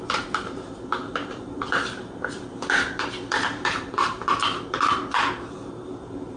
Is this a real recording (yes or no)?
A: no